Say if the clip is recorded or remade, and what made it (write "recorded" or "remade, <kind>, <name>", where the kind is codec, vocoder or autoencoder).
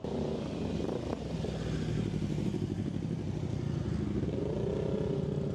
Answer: recorded